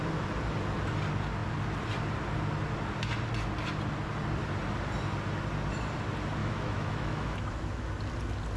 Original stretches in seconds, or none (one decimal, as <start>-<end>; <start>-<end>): 0.0-6.4; 7.9-8.6